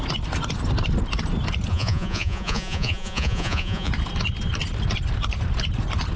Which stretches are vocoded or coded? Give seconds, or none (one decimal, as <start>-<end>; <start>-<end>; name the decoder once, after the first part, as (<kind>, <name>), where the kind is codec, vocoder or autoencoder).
1.7-3.9 (vocoder, Vocos)